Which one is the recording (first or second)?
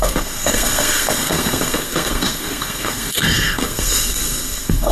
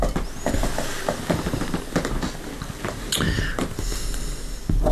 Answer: second